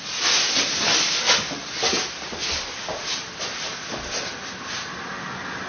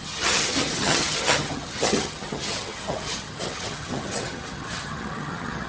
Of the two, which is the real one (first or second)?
first